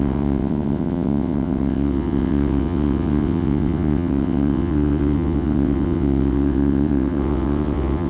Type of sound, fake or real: fake